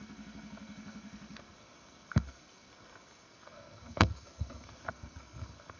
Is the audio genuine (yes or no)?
no